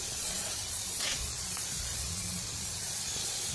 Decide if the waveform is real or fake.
fake